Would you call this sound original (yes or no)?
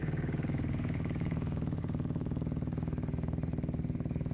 no